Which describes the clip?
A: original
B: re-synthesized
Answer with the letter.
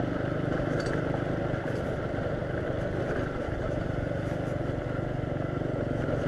A